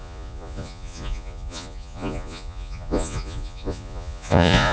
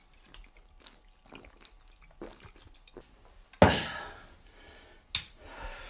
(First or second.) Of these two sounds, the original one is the second